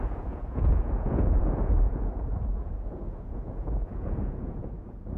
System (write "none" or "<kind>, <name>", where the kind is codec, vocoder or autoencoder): vocoder, Vocos